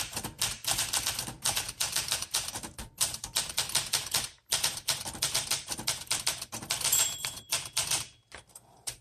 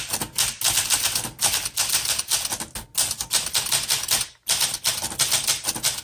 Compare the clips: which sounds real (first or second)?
second